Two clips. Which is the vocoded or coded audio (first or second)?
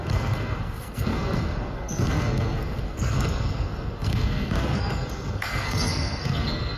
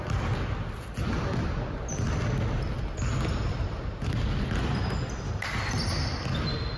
first